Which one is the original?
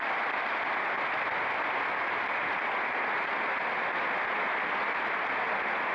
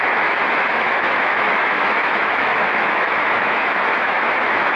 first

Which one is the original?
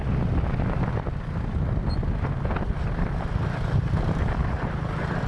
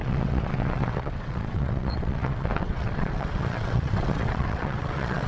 first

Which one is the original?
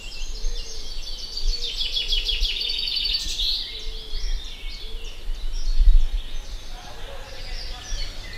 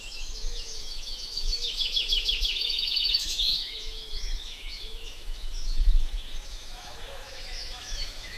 first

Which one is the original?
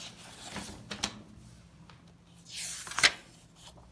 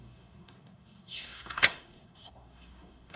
first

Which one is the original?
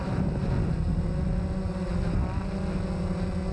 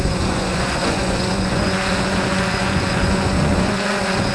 first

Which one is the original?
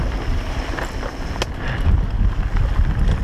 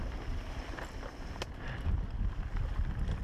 first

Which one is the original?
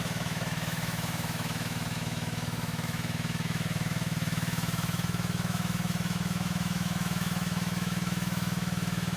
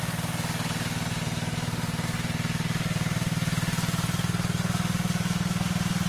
second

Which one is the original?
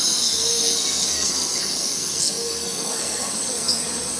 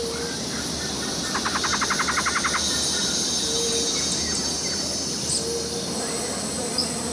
second